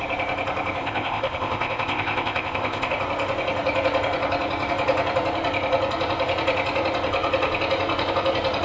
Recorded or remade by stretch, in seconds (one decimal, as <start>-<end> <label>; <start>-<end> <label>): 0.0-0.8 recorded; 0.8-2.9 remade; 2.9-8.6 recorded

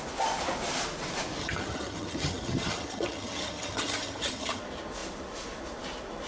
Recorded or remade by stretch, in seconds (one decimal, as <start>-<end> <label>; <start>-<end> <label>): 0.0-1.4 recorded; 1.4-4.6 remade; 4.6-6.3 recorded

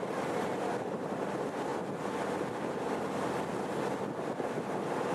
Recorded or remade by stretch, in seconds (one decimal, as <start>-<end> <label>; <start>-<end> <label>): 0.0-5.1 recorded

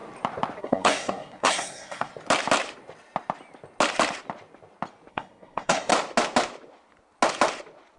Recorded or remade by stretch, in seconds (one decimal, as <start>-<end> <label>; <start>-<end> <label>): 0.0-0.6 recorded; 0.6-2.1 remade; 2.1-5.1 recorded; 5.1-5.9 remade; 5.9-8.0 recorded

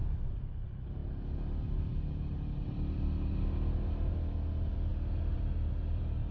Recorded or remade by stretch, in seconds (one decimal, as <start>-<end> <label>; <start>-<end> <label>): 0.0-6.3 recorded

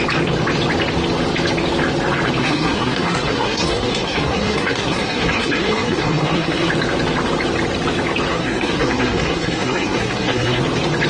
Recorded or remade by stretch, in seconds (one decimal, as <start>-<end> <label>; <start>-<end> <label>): 0.0-2.4 recorded; 2.4-6.7 remade; 6.7-8.3 recorded; 8.3-10.6 remade; 10.6-11.1 recorded

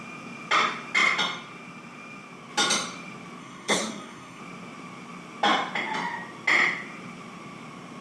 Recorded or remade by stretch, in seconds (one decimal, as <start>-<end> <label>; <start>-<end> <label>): 0.0-3.4 recorded; 3.4-4.4 remade; 4.4-8.0 recorded